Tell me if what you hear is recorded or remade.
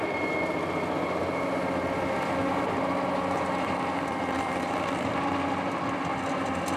recorded